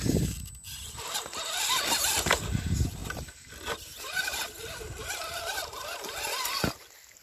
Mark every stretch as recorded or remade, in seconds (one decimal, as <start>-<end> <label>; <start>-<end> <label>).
0.0-7.2 recorded